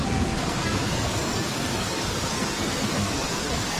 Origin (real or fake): fake